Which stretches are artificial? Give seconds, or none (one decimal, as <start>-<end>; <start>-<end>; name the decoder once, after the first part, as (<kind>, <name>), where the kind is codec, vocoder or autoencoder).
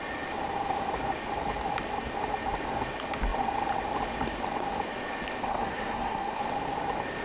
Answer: 5.5-6.4 (codec, SNAC)